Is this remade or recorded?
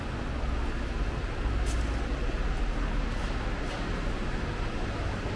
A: recorded